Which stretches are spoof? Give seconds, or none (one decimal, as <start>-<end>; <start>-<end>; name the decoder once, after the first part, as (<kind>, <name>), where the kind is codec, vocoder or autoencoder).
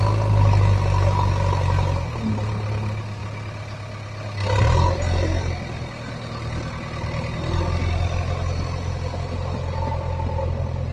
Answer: none